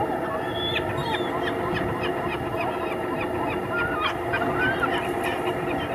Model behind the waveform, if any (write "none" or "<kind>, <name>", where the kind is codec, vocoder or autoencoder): none